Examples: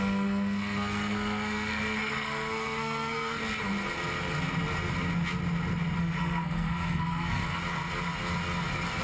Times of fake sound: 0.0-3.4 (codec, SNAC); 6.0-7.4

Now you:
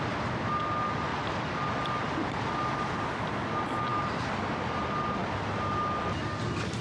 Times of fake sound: 1.1-2.1 (vocoder, BigVGAN v2); 3.9-4.8

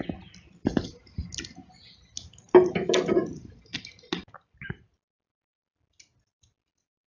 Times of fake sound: none

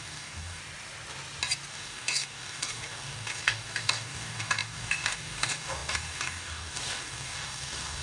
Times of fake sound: 0.0-0.6 (codec, DAC); 1.7-8.0

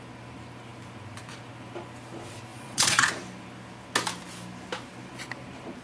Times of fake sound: 2.5-3.1 (vocoder, Vocos)

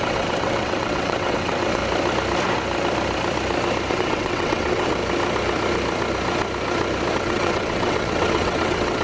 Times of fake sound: 0.0-1.8 (vocoder, WaveNeXt); 3.9-5.0; 7.1-9.0